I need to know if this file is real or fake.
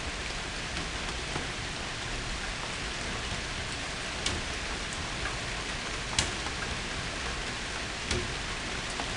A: real